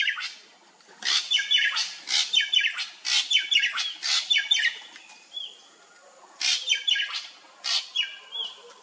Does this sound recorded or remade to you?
recorded